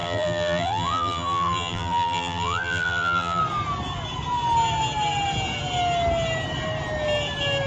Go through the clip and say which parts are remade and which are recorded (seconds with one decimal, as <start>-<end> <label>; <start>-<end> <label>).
0.0-3.4 remade; 3.4-7.7 recorded